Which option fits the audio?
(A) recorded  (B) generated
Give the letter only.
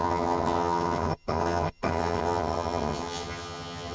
B